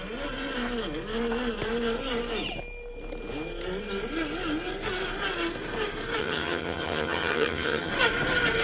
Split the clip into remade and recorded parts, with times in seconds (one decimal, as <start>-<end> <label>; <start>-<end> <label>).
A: 0.0-6.2 recorded; 6.2-7.9 remade; 7.9-8.6 recorded